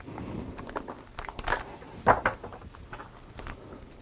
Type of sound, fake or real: real